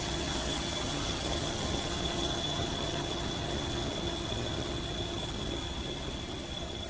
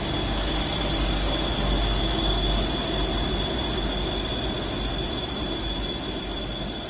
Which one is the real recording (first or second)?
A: second